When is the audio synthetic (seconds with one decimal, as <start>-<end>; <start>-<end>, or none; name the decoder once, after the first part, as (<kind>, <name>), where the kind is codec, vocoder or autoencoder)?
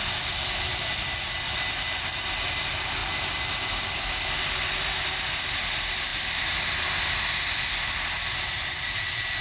3.0-4.3 (vocoder, BigVGAN v2)